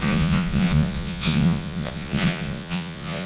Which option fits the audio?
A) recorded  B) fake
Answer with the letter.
B